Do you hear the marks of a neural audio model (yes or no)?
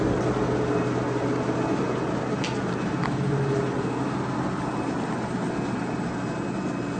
no